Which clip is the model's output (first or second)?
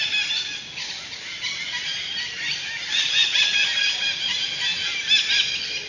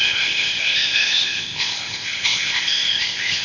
second